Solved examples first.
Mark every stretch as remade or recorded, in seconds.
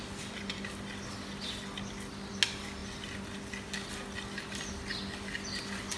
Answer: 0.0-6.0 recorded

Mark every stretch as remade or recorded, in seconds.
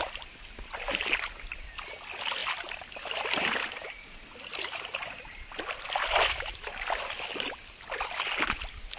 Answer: 0.0-2.4 recorded; 2.4-6.4 remade; 6.4-9.0 recorded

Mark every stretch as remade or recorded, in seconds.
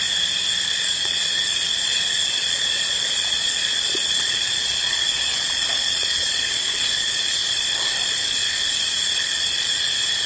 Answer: 0.0-0.7 recorded; 0.7-7.4 remade; 7.4-8.7 recorded; 8.7-10.3 remade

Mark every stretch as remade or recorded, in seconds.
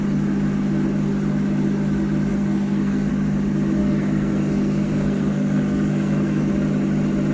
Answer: 0.0-2.3 recorded; 2.3-3.1 remade; 3.1-3.8 recorded; 3.8-6.5 remade; 6.5-7.3 recorded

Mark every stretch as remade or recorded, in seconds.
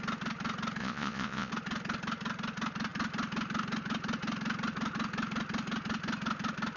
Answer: 0.0-0.8 recorded; 0.8-1.5 remade; 1.5-6.8 recorded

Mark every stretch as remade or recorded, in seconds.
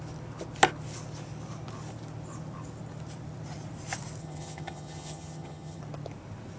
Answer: 0.0-4.2 recorded; 4.2-5.8 remade; 5.8-6.6 recorded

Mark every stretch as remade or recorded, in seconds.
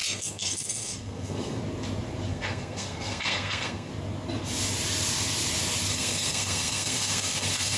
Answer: 0.0-1.6 remade; 1.6-2.3 recorded; 2.3-3.9 remade; 3.9-5.9 recorded; 5.9-7.8 remade